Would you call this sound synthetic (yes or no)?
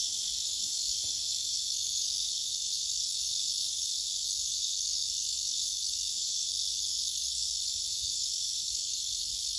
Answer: yes